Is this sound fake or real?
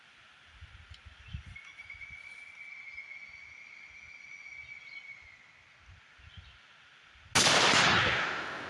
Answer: real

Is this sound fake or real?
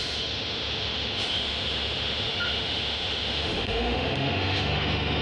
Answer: fake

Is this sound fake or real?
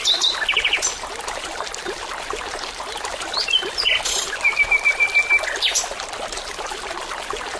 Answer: real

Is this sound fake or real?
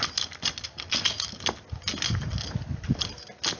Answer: real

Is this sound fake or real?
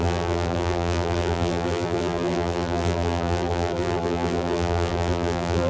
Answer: fake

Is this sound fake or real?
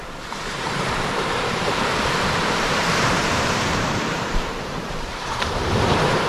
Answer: fake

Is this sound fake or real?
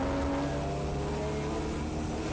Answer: real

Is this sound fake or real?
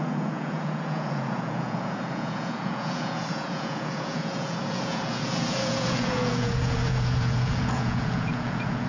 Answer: fake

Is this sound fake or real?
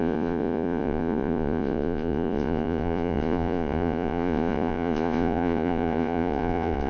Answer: fake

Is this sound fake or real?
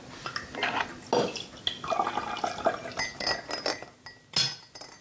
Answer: real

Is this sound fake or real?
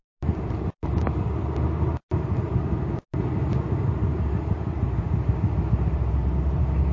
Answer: real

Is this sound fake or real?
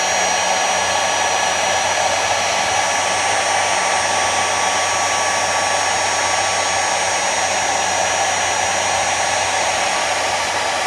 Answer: real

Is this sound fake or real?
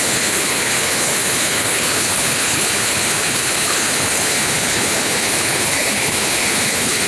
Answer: fake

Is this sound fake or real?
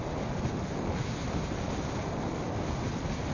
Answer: real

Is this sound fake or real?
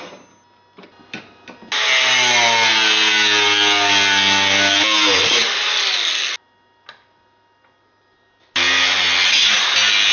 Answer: real